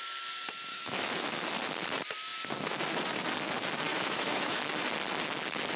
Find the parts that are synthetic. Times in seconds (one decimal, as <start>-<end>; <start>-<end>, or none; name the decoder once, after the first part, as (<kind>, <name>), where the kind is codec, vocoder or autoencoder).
0.7-1.5 (autoencoder, DAC-VAE); 3.9-4.6

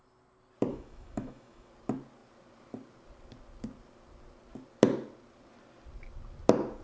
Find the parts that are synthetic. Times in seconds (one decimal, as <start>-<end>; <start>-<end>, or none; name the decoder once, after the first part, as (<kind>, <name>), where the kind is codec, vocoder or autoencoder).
0.7-1.7 (autoencoder, DAC-VAE)

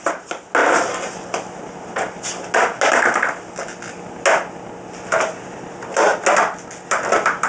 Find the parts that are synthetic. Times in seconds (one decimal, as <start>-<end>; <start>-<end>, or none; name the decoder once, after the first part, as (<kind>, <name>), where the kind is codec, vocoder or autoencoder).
none

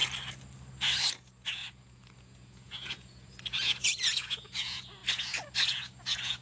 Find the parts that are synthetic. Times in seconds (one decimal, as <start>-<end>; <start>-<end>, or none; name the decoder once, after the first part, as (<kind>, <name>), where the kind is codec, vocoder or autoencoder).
1.1-6.4 (vocoder, Vocos)

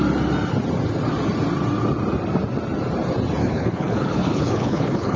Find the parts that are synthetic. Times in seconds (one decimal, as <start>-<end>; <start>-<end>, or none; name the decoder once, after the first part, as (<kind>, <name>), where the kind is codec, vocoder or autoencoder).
3.4-5.2 (codec, HILCodec)

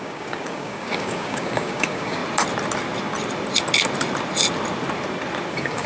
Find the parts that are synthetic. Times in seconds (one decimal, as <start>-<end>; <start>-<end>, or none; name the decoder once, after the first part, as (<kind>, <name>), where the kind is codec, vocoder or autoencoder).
0.0-2.2 (codec, DAC); 5.5-5.9

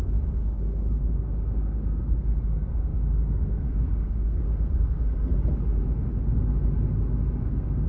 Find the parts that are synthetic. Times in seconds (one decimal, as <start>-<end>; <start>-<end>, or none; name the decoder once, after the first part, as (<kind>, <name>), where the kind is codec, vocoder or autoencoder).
0.0-5.3 (codec, SNAC); 7.4-7.9